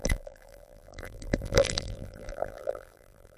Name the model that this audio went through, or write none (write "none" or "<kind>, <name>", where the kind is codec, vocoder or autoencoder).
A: vocoder, BigVGAN v2